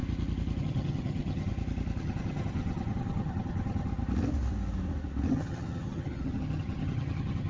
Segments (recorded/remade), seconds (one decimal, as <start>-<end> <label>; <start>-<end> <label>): 0.0-0.6 recorded; 0.6-1.5 remade; 1.5-2.0 recorded; 2.0-3.9 remade; 3.9-5.3 recorded; 5.3-7.5 remade